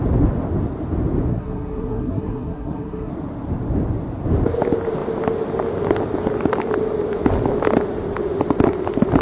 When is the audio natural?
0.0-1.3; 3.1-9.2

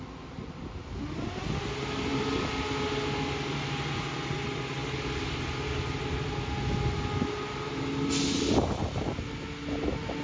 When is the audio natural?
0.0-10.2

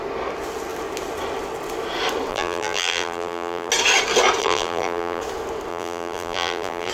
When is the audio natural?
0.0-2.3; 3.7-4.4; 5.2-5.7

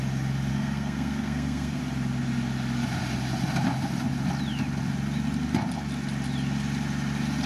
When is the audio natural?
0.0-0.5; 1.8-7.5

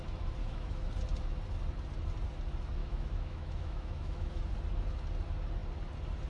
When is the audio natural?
0.0-0.4; 0.9-2.8; 4.4-6.3